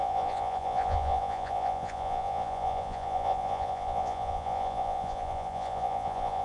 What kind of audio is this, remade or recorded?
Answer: remade